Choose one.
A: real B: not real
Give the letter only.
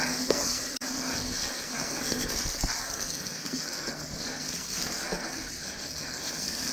B